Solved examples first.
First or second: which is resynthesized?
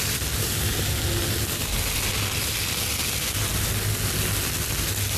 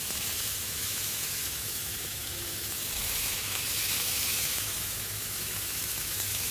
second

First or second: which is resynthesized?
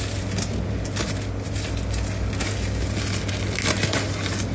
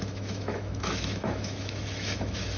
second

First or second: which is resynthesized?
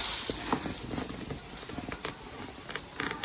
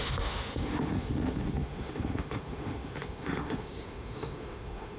second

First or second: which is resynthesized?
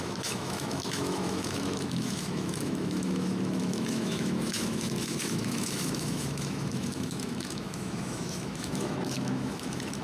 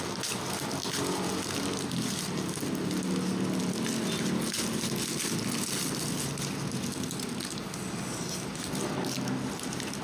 first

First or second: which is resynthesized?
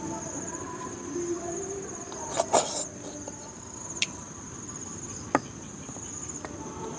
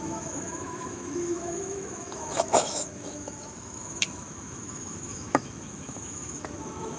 second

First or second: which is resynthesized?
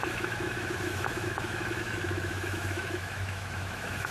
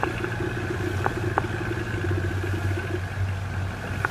first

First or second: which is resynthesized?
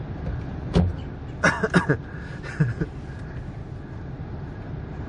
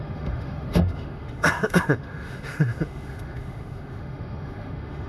second